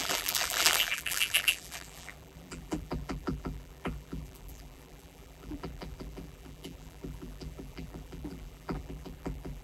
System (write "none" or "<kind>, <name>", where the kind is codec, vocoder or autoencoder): vocoder, BigVGAN v2